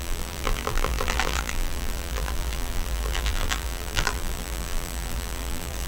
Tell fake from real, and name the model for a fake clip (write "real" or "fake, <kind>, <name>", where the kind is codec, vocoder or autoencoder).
fake, vocoder, BigVGAN v2